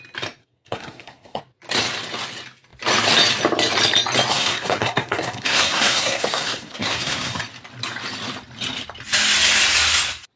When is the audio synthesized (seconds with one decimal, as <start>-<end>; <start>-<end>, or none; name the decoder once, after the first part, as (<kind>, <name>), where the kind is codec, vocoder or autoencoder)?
0.4-1.4 (codec, SNAC); 4.3-7.4